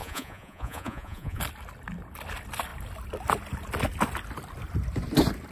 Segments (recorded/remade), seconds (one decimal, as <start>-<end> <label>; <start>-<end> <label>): 0.0-1.4 remade; 1.4-5.5 recorded